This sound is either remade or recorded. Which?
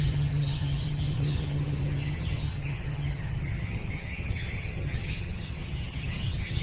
remade